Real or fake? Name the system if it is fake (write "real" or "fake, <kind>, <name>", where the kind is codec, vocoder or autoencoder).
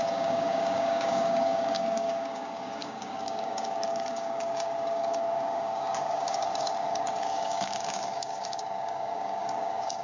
fake, codec, DAC